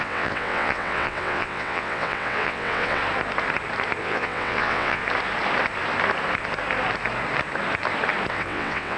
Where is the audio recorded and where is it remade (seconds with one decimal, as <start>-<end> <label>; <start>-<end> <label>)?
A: 0.0-3.0 remade; 3.0-4.0 recorded; 4.0-5.0 remade; 5.0-8.3 recorded; 8.3-9.0 remade